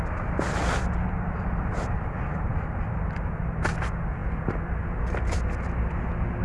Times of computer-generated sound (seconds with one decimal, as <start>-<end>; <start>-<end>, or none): none